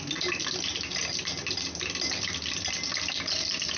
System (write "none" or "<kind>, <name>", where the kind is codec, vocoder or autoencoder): none